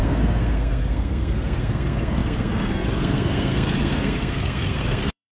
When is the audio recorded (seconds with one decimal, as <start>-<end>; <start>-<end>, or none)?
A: none

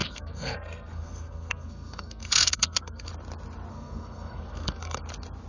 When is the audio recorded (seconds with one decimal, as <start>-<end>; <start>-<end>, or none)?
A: 3.1-3.7; 5.0-5.5

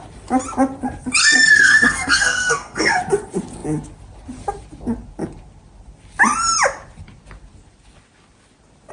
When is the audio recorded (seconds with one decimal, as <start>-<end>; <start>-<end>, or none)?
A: 0.0-1.2; 3.0-8.9

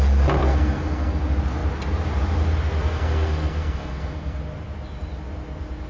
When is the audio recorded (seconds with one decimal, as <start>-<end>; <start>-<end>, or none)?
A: 0.0-0.4; 1.2-2.8; 4.4-5.9

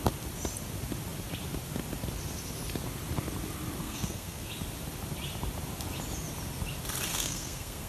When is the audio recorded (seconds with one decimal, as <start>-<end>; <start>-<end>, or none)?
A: 0.0-3.8; 4.5-7.1

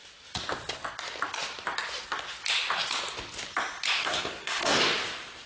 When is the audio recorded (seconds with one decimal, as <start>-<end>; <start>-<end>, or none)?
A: 0.0-4.0; 4.8-5.5